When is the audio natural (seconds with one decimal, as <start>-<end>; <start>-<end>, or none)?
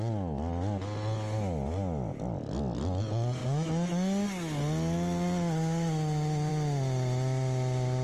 0.0-8.0